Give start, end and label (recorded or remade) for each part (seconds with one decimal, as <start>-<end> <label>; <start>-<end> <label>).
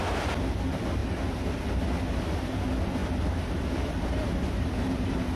0.0-1.0 recorded; 1.0-1.6 remade; 1.6-3.0 recorded; 3.0-5.4 remade